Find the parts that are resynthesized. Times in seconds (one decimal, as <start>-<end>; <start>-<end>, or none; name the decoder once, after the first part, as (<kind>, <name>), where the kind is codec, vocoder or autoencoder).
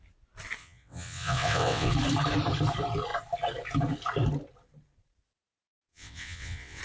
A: 0.6-1.9 (vocoder, WaveNeXt); 5.9-6.8